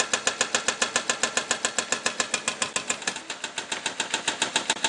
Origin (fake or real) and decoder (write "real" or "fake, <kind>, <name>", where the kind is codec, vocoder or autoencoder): real